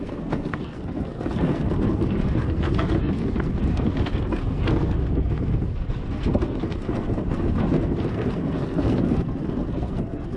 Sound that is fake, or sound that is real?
fake